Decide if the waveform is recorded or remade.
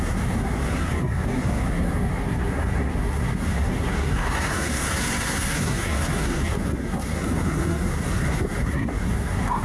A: remade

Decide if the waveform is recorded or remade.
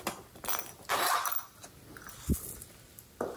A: recorded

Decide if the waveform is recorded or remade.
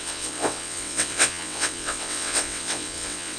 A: remade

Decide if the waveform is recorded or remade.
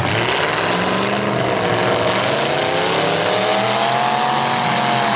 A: recorded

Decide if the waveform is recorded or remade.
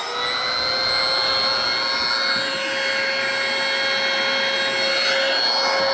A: recorded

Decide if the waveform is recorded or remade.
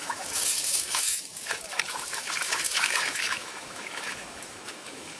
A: remade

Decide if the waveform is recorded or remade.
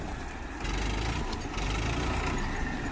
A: recorded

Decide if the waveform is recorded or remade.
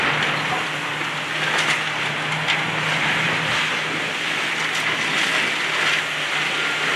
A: recorded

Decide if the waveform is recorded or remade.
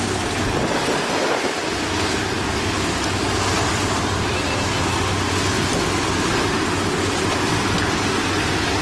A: recorded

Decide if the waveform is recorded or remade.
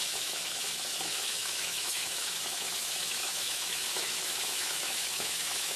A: remade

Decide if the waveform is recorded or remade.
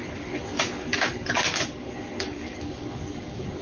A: remade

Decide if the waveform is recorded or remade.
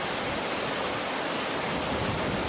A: recorded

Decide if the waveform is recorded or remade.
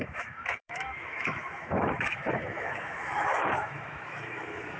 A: remade